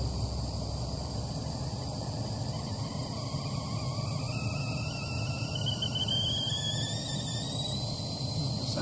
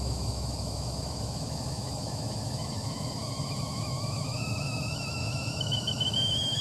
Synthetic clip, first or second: second